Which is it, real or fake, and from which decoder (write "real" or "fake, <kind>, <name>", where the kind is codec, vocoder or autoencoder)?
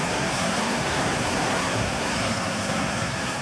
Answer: fake, codec, SNAC